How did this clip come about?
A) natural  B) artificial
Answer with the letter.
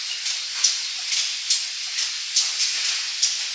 A